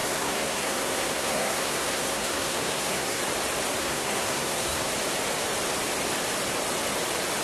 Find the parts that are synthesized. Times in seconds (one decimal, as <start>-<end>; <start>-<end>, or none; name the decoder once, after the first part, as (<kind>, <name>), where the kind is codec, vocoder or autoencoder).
0.0-3.2 (codec, SNAC); 3.8-4.9